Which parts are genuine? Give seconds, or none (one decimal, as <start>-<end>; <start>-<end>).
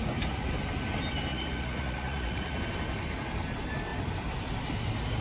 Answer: 0.0-1.3; 2.6-5.2